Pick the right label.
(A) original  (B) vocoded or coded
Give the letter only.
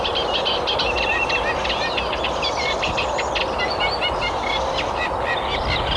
A